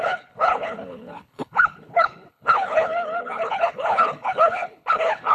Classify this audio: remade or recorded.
remade